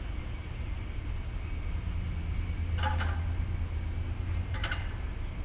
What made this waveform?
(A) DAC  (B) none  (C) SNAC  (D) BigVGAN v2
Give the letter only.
B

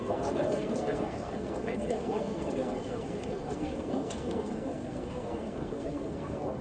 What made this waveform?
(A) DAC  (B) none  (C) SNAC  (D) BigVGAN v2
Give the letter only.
C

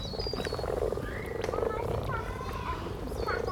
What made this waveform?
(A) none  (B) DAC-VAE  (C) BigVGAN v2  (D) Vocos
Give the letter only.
C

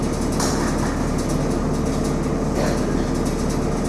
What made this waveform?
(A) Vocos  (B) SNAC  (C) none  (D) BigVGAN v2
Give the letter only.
C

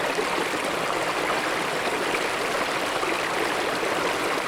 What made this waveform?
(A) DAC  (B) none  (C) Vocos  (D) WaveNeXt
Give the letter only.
B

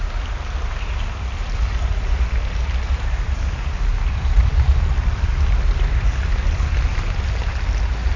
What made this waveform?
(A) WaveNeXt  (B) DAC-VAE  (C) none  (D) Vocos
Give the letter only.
C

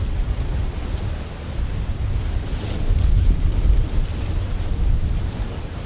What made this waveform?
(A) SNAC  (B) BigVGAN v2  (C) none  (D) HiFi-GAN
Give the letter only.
C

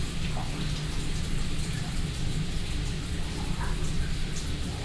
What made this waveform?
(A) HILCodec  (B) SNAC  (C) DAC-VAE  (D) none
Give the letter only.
D